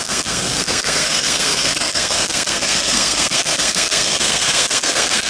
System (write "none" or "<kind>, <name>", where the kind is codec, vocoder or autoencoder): codec, SNAC